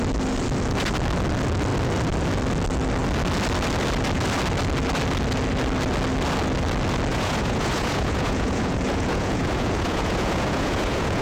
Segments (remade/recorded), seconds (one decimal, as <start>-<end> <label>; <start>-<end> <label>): 0.0-7.1 recorded; 7.1-11.2 remade